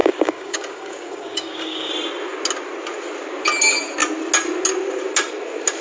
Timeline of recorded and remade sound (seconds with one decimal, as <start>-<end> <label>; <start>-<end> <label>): 0.0-1.9 remade; 1.9-5.8 recorded